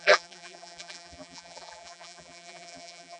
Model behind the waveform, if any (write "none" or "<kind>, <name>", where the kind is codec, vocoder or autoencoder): vocoder, BigVGAN v2